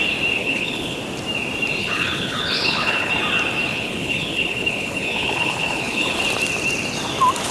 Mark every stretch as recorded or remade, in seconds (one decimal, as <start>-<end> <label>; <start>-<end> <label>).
0.0-0.4 recorded; 0.4-1.0 remade; 1.0-1.8 recorded; 1.8-3.1 remade; 3.1-3.7 recorded; 3.7-6.2 remade; 6.2-7.5 recorded